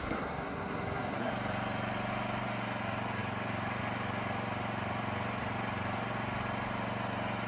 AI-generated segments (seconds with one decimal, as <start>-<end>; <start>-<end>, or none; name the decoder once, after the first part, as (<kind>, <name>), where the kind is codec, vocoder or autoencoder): 0.0-1.3 (codec, SNAC)